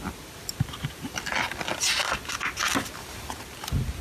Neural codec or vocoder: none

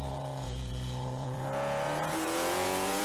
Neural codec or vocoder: vocoder, Vocos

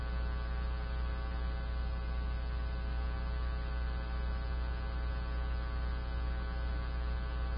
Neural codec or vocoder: none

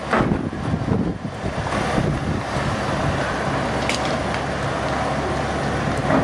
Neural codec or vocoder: none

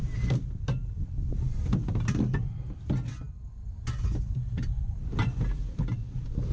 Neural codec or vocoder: none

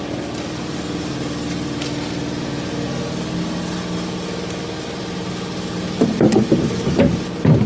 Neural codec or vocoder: none